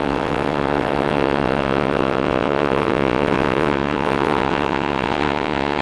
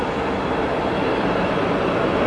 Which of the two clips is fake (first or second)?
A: first